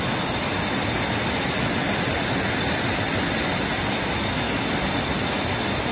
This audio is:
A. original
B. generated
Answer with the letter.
A